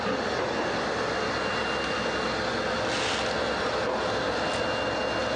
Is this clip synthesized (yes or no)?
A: no